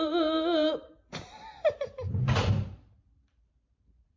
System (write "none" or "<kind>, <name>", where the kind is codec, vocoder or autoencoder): vocoder, BigVGAN v2